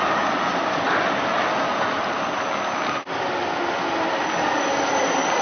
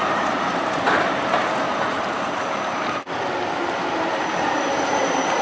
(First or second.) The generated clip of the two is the second